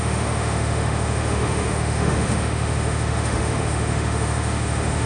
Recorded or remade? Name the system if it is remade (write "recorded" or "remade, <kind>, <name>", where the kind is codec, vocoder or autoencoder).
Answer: remade, autoencoder, DAC-VAE